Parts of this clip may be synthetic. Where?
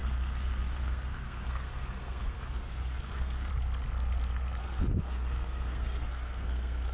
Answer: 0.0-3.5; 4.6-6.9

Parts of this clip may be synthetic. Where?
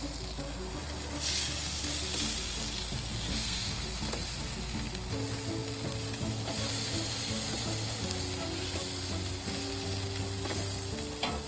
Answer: 3.3-3.8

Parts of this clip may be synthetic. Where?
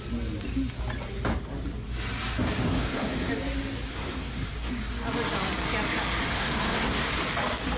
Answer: 2.7-3.3; 3.9-4.7; 6.3-7.1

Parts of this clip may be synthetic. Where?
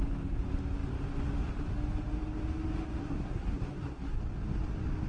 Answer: 3.0-4.2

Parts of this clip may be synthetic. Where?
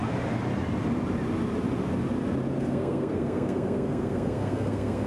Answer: 2.6-5.1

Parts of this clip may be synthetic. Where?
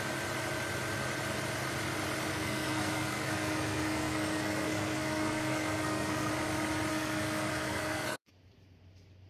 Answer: 2.3-6.3; 6.9-8.3